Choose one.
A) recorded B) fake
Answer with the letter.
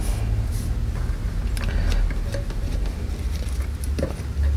A